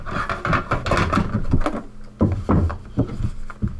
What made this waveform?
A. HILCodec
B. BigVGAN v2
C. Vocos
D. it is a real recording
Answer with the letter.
D